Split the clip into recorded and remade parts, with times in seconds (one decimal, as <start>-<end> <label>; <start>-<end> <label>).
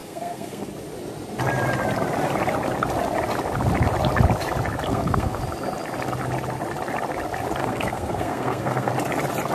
0.0-0.7 remade; 0.7-4.9 recorded; 4.9-5.4 remade; 5.4-7.6 recorded; 7.6-8.9 remade; 8.9-9.5 recorded